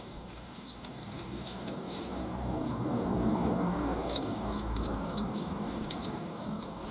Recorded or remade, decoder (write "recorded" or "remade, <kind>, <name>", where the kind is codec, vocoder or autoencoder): remade, codec, DAC